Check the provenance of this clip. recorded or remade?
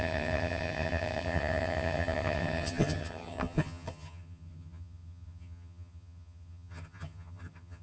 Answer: remade